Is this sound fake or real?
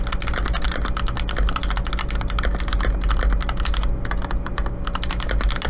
real